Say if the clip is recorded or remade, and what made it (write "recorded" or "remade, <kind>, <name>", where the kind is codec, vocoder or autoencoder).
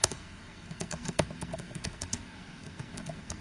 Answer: remade, codec, SNAC